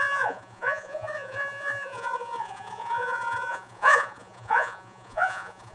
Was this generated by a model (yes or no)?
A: yes